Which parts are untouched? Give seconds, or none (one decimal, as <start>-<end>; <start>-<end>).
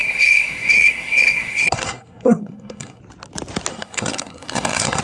3.0-3.7